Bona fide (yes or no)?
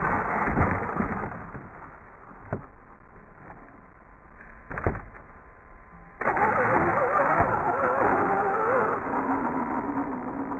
yes